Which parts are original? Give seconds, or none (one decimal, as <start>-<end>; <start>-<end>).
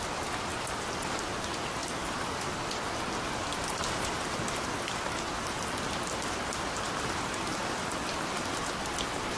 0.0-1.8; 2.4-3.4; 5.1-9.4